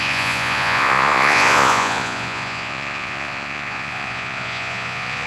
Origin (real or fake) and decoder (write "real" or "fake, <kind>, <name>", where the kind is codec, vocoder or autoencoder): fake, vocoder, Vocos